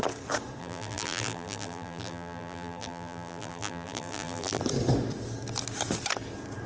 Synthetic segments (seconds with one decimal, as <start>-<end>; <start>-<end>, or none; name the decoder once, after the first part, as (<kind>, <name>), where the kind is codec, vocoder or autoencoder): 0.6-4.6 (vocoder, BigVGAN v2)